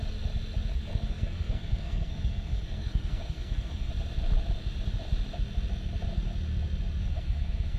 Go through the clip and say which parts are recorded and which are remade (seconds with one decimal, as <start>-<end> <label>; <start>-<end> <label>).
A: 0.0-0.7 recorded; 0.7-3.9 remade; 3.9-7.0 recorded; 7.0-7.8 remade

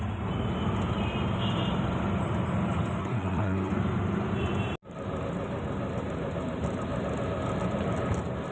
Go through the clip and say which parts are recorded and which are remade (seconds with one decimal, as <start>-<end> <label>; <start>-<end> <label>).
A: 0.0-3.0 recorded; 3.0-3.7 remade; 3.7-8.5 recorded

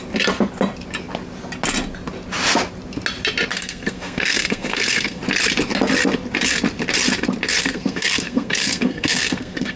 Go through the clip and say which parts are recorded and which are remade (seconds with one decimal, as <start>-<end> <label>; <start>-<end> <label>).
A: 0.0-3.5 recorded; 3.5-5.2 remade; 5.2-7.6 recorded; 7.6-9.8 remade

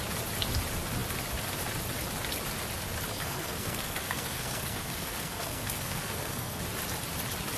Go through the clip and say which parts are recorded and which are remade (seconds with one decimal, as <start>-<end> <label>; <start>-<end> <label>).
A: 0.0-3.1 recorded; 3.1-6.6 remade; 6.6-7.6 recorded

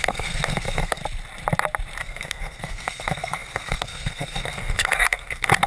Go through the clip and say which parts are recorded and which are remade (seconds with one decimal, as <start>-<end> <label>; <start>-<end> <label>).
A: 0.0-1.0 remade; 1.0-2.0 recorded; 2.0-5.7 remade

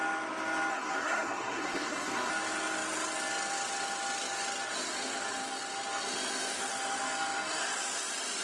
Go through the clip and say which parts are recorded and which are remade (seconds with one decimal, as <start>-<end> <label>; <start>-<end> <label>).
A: 0.0-0.7 recorded; 0.7-2.3 remade; 2.3-8.4 recorded

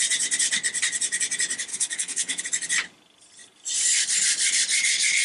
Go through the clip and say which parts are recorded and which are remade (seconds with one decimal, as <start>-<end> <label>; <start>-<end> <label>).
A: 0.0-1.7 recorded; 1.7-2.4 remade; 2.4-5.2 recorded

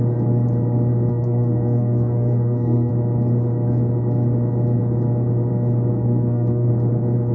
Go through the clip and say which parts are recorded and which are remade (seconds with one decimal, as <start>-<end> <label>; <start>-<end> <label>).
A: 0.0-1.1 recorded; 1.1-2.9 remade; 2.9-5.9 recorded; 5.9-6.7 remade; 6.7-7.3 recorded